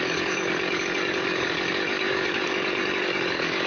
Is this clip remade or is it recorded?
remade